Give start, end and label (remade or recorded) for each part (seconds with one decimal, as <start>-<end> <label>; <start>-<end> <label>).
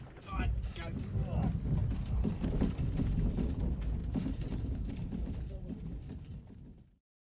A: 0.0-1.8 recorded; 1.8-2.4 remade; 2.4-4.0 recorded; 4.0-6.4 remade; 6.4-7.3 recorded